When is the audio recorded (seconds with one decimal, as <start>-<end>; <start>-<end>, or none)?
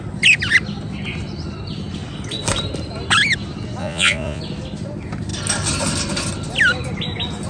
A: 0.0-3.8; 4.4-7.5